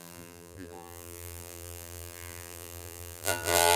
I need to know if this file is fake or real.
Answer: fake